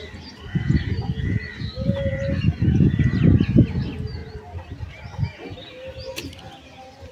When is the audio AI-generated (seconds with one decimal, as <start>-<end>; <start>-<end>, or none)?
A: none